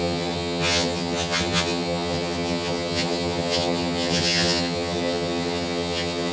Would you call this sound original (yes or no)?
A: no